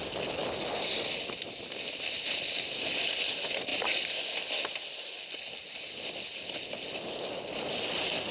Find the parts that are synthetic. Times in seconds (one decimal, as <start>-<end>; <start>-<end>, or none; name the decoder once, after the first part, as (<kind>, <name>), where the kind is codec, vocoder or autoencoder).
none